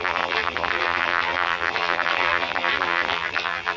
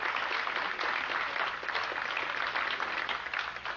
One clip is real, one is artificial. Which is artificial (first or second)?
first